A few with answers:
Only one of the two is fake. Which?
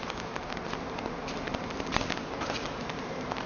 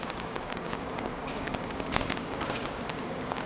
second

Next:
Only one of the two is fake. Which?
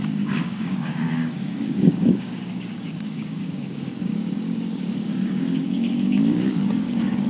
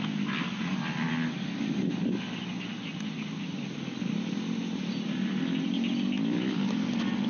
first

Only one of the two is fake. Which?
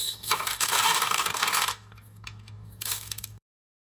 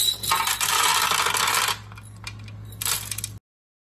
first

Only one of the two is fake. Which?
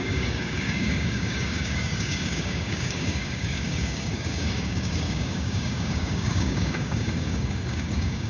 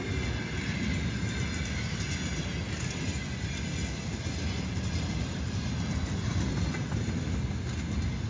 first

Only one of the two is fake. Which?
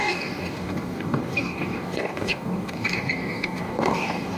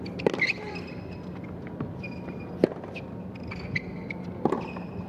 first